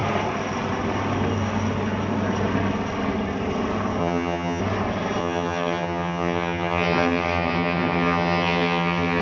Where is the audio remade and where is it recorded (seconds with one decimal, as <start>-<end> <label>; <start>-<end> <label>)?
0.0-4.0 recorded; 4.0-4.6 remade; 4.6-5.2 recorded; 5.2-9.2 remade